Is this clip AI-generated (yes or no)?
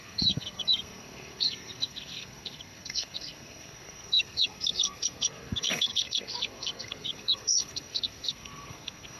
yes